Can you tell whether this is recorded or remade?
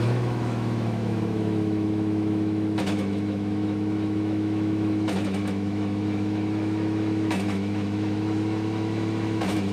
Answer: remade